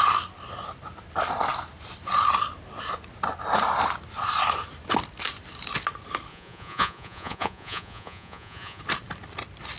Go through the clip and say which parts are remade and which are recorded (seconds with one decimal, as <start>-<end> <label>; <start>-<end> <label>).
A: 0.0-6.3 recorded; 6.3-8.8 remade; 8.8-9.8 recorded